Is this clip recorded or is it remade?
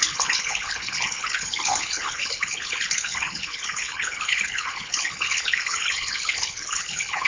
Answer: remade